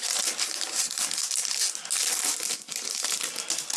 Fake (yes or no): no